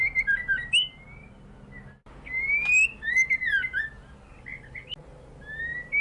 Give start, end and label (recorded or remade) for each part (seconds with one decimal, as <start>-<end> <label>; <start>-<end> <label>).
0.0-6.0 recorded